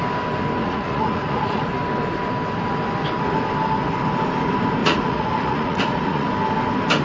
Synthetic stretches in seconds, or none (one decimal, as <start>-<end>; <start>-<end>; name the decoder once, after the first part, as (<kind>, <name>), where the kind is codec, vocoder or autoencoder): 0.6-1.7 (vocoder, Vocos); 4.8-6.3